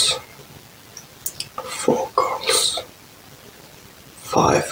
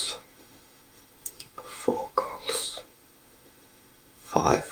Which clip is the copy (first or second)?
second